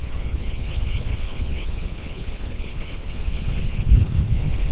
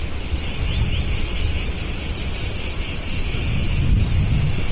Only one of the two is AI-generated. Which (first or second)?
first